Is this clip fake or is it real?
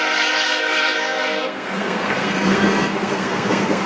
fake